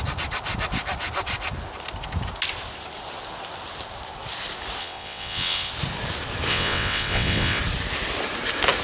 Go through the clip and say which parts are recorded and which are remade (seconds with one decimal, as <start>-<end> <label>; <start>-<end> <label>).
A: 0.0-4.8 recorded; 4.8-5.7 remade; 5.7-6.5 recorded; 6.5-7.6 remade; 7.6-8.8 recorded